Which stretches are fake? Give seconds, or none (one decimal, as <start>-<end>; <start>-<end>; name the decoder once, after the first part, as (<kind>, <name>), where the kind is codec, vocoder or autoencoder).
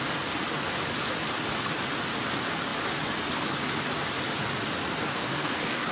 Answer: 5.1-5.9 (codec, SNAC)